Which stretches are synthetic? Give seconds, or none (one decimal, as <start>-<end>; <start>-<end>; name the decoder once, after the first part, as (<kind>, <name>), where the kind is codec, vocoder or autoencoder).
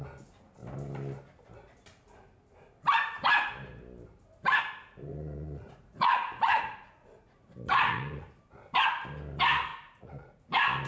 5.1-8.4 (vocoder, Vocos); 9.7-10.4